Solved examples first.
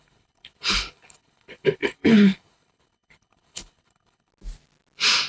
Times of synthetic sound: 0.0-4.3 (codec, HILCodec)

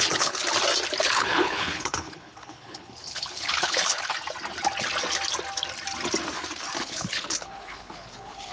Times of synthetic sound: 0.0-0.4 (codec, HILCodec); 1.0-4.1; 6.8-8.5

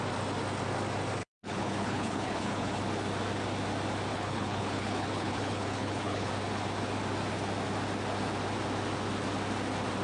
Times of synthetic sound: 1.2-2.8 (codec, HILCodec); 4.1-6.3

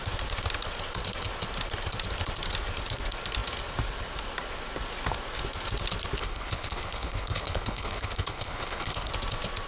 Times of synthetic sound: 6.2-9.1 (codec, HILCodec)

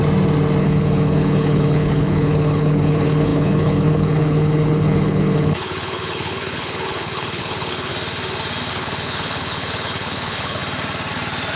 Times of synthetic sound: 0.6-7.9 (codec, HILCodec); 8.7-10.6

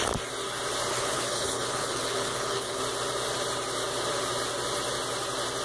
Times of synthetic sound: 0.9-2.8 (codec, HILCodec)

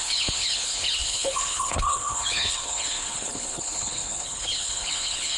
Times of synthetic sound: 0.0-5.4 (codec, HILCodec)